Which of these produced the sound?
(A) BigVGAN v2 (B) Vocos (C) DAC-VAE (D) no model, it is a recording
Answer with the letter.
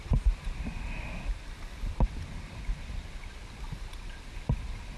D